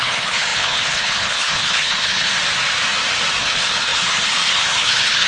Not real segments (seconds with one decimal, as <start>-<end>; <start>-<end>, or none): 0.0-2.3; 3.4-5.3